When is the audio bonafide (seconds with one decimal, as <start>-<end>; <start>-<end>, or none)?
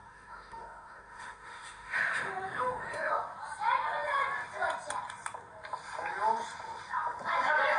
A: 3.1-7.8